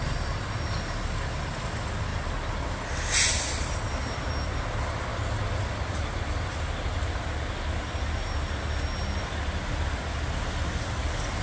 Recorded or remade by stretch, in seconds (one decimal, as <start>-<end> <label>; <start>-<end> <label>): 0.0-11.4 recorded